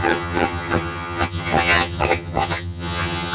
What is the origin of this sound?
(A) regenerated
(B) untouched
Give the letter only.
A